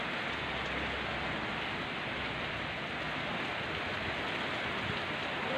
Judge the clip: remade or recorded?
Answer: recorded